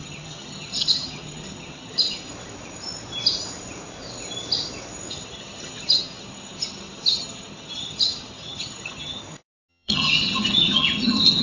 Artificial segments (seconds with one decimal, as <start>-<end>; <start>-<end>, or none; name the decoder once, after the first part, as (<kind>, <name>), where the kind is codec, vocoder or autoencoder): 0.0-2.3 (vocoder, HiFi-GAN); 5.1-9.2; 9.7-11.4